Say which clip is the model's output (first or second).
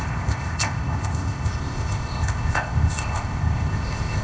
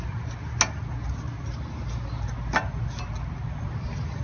first